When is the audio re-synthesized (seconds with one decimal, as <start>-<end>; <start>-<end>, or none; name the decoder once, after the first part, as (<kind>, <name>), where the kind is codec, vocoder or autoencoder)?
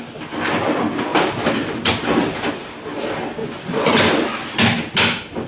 3.4-3.9 (vocoder, Vocos)